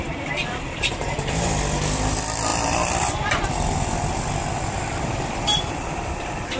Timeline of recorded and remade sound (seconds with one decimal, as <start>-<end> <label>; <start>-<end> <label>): 0.0-6.6 remade